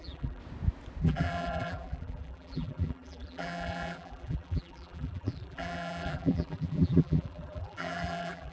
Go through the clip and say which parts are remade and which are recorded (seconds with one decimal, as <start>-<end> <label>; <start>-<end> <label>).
0.0-0.4 remade; 0.4-1.0 recorded; 1.0-8.5 remade